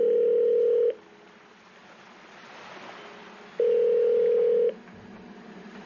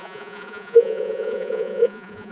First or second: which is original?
first